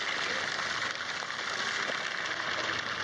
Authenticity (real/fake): real